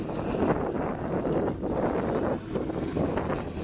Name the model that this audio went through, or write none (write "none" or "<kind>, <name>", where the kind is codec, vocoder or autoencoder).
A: none